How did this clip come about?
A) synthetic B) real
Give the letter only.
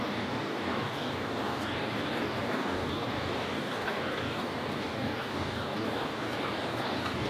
A